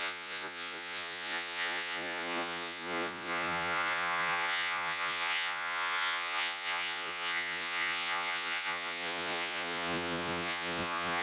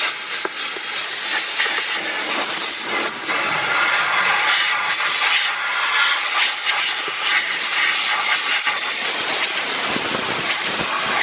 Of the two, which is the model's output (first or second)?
first